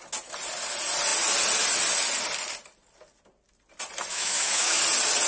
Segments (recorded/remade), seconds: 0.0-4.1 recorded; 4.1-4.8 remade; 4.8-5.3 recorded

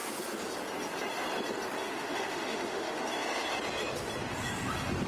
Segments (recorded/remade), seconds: 0.0-1.8 recorded; 1.8-3.0 remade; 3.0-5.1 recorded

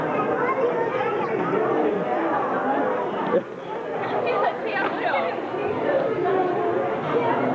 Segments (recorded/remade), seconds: 0.0-7.5 recorded